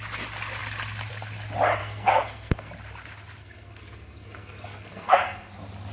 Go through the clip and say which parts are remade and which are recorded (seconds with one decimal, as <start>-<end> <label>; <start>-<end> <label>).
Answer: 0.0-1.8 recorded; 1.8-2.7 remade; 2.7-3.4 recorded; 3.4-5.5 remade; 5.5-5.9 recorded